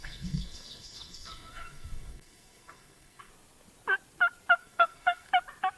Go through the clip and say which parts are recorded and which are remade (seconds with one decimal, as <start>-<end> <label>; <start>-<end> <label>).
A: 0.0-3.3 remade; 3.3-4.6 recorded; 4.6-5.3 remade; 5.3-5.8 recorded